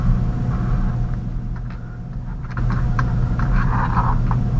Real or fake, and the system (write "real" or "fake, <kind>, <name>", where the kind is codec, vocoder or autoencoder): real